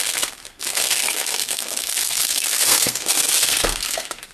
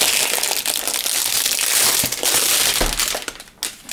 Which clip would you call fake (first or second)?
first